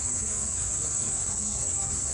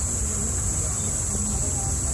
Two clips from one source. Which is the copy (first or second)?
first